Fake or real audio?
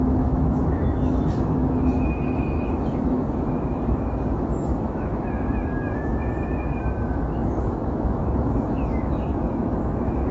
fake